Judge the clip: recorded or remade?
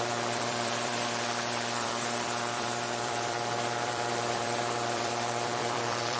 remade